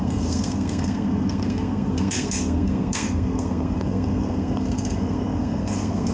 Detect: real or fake fake